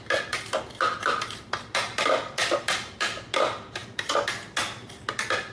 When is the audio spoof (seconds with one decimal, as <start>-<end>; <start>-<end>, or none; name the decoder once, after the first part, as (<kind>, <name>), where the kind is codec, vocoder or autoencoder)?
none